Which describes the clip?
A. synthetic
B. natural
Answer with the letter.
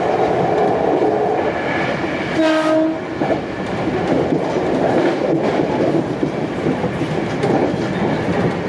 B